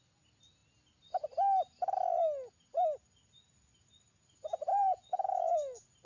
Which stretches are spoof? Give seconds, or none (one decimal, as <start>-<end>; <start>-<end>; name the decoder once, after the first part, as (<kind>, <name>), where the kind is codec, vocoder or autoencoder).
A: 4.7-5.5 (vocoder, Vocos)